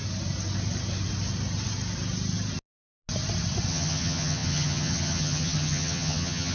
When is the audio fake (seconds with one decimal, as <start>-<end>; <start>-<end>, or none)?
3.7-6.5